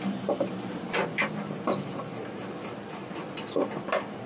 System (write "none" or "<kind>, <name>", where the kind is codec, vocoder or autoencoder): none